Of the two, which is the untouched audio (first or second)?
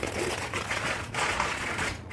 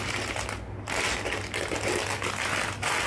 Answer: second